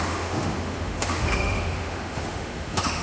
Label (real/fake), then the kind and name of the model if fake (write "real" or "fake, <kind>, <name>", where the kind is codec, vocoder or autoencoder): fake, autoencoder, DAC-VAE